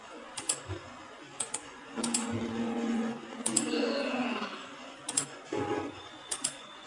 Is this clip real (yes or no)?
no